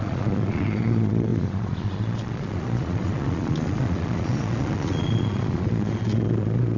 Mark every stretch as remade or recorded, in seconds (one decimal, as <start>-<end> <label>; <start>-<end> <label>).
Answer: 0.0-6.8 remade